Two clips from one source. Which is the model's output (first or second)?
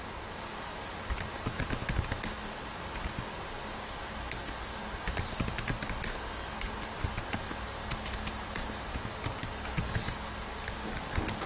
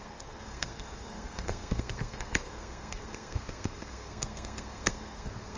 second